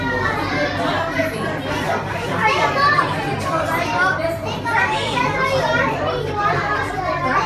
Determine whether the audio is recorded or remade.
remade